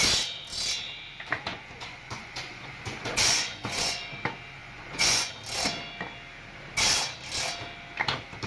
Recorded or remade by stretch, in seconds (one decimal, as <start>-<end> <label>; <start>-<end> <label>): 0.0-1.5 recorded; 1.5-4.1 remade; 4.1-4.6 recorded; 4.6-5.3 remade; 5.3-8.5 recorded